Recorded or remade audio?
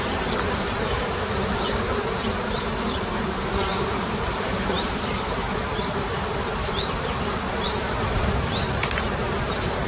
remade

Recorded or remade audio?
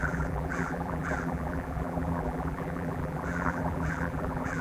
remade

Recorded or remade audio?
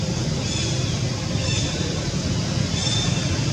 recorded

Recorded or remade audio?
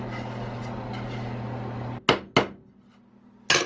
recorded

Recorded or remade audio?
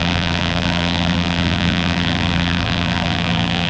remade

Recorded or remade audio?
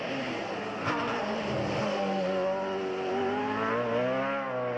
recorded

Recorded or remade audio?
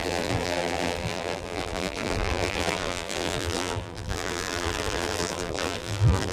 remade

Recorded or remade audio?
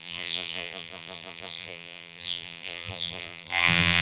remade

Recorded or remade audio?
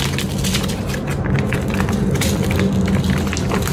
recorded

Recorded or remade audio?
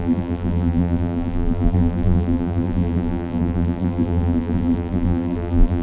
remade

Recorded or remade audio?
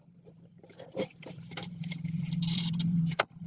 remade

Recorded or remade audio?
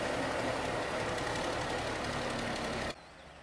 recorded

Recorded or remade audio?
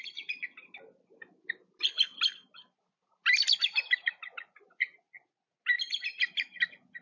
recorded